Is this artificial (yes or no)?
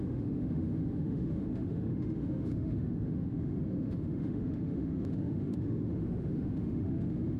yes